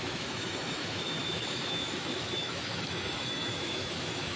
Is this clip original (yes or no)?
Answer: no